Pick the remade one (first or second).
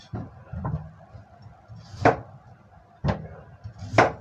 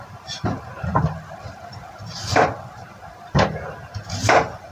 second